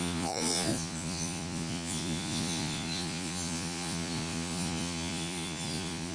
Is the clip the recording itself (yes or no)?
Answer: no